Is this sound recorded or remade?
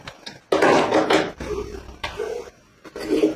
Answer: recorded